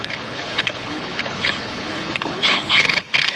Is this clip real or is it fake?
fake